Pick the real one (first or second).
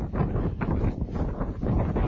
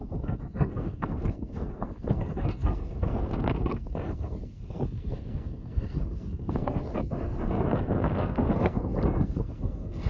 first